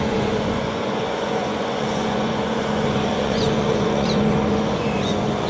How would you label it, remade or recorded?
remade